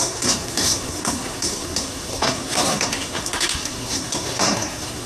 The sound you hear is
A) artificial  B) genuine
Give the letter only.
A